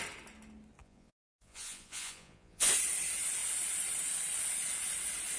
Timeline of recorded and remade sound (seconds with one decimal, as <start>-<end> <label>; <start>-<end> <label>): 0.0-0.8 recorded; 0.8-2.7 remade; 2.7-5.4 recorded